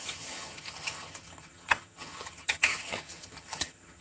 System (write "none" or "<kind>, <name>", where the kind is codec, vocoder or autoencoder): vocoder, HiFi-GAN